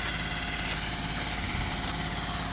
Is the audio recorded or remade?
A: recorded